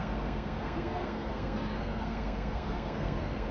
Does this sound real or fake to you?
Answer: fake